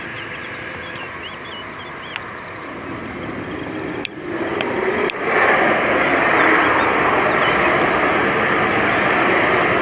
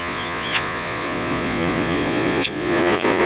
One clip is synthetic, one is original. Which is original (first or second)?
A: first